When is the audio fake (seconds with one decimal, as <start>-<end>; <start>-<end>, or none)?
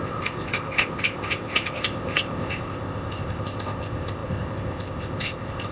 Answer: 0.0-5.7